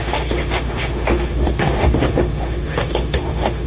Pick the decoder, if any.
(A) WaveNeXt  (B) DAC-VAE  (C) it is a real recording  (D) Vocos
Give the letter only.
B